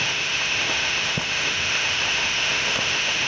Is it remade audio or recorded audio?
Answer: remade